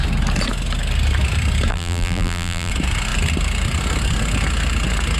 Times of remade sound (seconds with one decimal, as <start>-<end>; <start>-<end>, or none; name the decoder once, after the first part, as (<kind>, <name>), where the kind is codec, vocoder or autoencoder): 1.7-2.7 (vocoder, BigVGAN v2)